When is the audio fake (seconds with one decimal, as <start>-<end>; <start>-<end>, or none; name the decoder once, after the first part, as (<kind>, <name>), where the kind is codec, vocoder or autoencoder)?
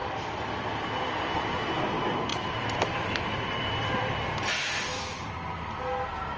2.3-5.3 (vocoder, BigVGAN v2)